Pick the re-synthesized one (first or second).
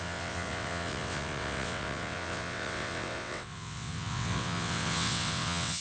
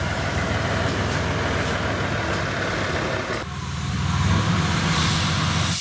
first